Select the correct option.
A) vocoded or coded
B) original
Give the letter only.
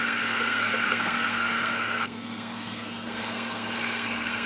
A